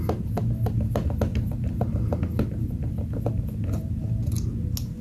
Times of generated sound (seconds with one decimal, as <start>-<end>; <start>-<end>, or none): none